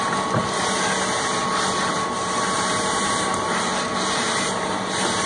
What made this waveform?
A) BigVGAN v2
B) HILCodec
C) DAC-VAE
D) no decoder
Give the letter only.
A